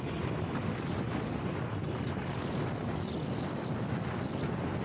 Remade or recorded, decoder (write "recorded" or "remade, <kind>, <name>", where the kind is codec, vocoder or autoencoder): recorded